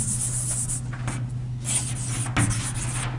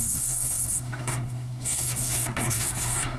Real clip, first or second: first